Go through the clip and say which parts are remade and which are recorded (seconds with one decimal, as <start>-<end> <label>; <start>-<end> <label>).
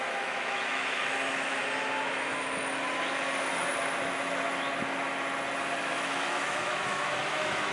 0.0-1.6 remade; 1.6-5.8 recorded; 5.8-7.7 remade